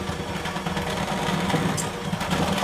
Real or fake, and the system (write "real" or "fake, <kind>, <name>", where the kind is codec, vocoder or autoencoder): real